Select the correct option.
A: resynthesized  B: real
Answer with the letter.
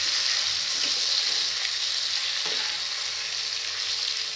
B